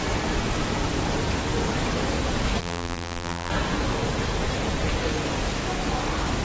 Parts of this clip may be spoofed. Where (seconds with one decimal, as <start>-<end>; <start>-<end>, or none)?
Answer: 2.6-3.5